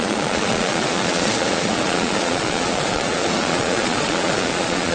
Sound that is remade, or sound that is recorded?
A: remade